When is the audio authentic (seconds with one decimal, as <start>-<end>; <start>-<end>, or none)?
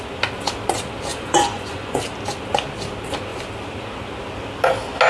0.0-1.1; 2.0-5.1